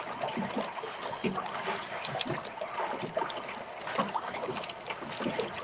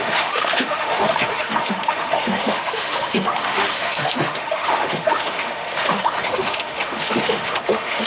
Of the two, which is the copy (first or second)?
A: second